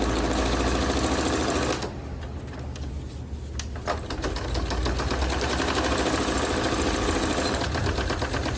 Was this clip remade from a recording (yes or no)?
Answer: no